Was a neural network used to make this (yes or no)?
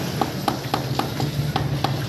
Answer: no